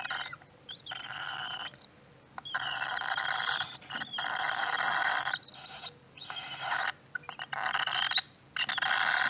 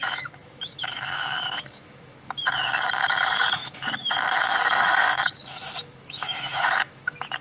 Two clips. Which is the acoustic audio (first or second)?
first